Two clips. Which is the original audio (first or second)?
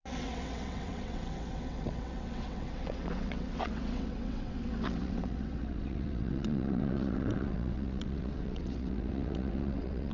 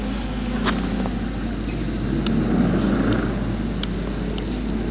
second